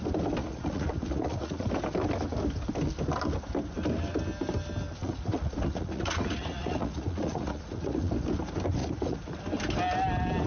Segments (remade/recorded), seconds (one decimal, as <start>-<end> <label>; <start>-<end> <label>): 0.0-0.4 recorded; 0.4-1.7 remade; 1.7-5.0 recorded; 5.0-8.1 remade; 8.1-8.8 recorded; 8.8-9.4 remade; 9.4-10.5 recorded